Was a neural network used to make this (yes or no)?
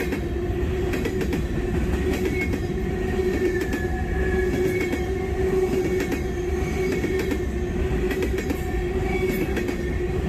no